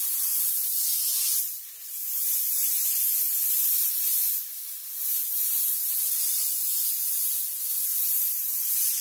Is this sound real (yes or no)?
yes